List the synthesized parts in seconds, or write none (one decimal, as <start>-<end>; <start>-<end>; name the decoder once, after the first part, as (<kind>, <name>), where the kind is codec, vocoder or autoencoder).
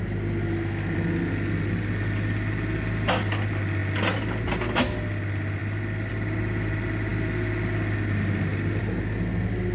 none